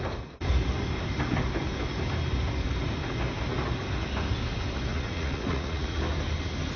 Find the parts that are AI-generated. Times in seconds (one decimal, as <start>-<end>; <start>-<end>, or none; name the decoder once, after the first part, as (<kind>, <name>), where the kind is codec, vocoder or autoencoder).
4.9-6.0 (vocoder, Vocos)